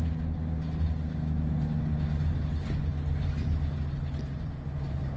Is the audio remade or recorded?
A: recorded